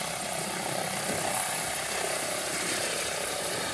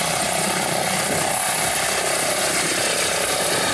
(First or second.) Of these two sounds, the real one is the second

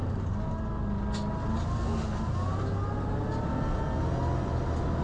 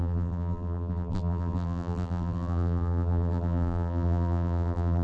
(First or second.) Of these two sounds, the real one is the first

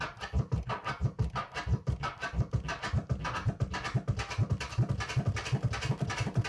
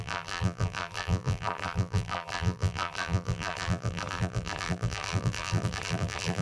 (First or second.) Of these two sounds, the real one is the first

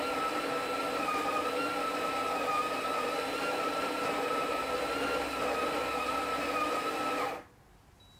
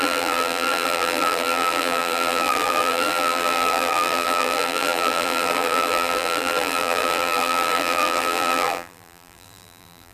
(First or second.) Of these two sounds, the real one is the first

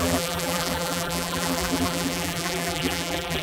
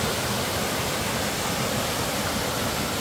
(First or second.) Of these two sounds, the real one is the second